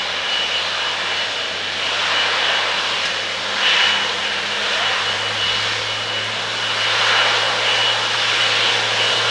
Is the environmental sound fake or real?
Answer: real